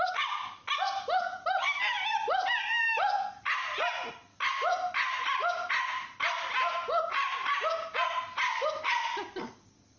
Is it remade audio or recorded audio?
recorded